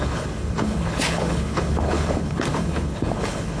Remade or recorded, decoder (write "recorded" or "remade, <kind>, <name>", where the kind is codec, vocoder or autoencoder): remade, codec, HILCodec